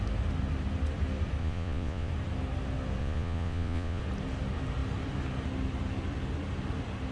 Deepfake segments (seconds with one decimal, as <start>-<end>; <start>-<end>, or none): 1.4-2.1; 3.0-4.0